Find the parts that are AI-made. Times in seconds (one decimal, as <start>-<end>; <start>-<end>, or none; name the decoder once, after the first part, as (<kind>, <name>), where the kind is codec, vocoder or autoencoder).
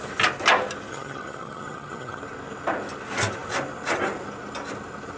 0.9-2.2 (vocoder, HiFi-GAN)